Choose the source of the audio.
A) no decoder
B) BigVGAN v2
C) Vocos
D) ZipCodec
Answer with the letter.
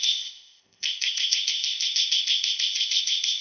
D